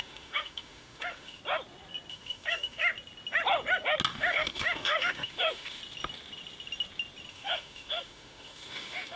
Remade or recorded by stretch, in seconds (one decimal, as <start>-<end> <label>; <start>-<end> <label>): 0.0-1.4 remade; 1.4-2.1 recorded; 2.1-2.9 remade; 2.9-4.1 recorded; 4.1-5.8 remade; 5.8-7.3 recorded; 7.3-9.2 remade